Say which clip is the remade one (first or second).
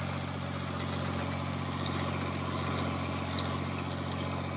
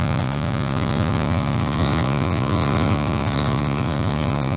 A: second